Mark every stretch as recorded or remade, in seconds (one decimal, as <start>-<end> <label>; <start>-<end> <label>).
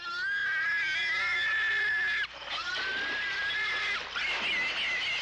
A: 0.0-5.2 recorded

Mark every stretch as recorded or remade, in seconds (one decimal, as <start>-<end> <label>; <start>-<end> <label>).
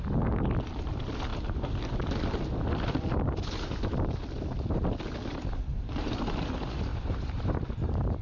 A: 0.0-5.7 recorded; 5.7-6.2 remade; 6.2-6.9 recorded; 6.9-8.2 remade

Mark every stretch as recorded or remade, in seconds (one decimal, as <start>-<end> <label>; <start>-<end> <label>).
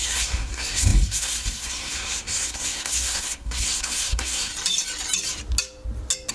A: 0.0-4.5 remade; 4.5-6.3 recorded